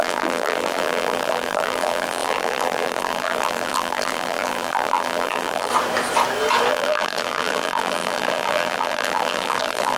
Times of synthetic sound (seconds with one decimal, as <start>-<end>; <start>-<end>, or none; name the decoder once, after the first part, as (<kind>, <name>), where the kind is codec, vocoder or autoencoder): 0.0-5.7 (vocoder, BigVGAN v2); 6.7-10.0